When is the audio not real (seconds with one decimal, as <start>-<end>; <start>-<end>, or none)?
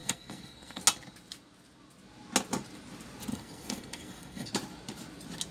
0.0-0.8; 3.3-4.5